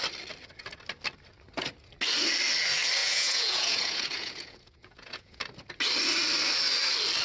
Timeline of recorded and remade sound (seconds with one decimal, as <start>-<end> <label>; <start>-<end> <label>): 0.0-3.0 recorded; 3.0-5.4 remade; 5.4-7.2 recorded